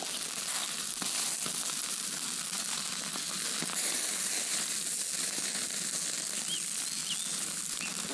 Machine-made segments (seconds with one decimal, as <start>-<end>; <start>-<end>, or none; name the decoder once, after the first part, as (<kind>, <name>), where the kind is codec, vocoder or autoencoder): none